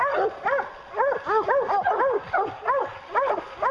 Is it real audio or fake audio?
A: real